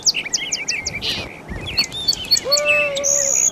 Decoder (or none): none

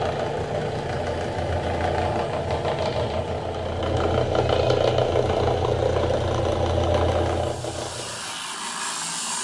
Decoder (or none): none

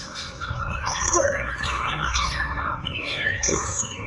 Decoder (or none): codec, SNAC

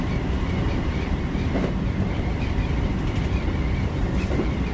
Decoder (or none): vocoder, BigVGAN v2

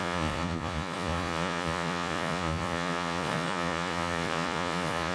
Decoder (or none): vocoder, Vocos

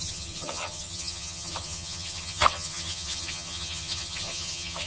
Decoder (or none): vocoder, HiFi-GAN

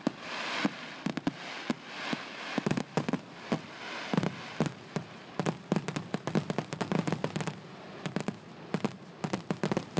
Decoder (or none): none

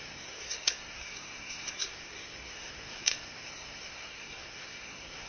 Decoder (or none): codec, SNAC